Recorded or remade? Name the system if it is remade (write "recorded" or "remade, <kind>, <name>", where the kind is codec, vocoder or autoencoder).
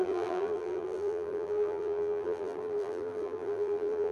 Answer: remade, vocoder, BigVGAN v2